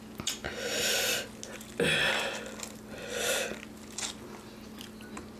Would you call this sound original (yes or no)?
yes